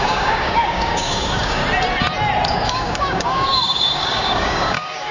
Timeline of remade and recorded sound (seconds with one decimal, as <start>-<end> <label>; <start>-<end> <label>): 0.0-1.6 remade; 1.6-2.5 recorded; 2.5-5.1 remade